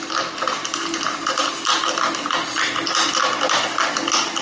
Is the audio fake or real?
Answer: real